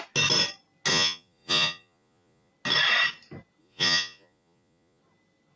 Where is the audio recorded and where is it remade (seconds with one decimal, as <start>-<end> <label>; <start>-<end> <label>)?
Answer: 0.0-0.9 recorded; 0.9-2.5 remade; 2.5-3.6 recorded; 3.6-5.0 remade; 5.0-5.6 recorded